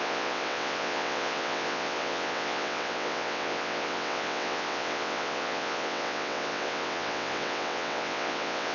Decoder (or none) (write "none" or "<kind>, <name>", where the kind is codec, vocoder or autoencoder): vocoder, WaveNeXt